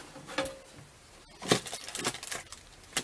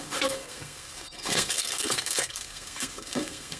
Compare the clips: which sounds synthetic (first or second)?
second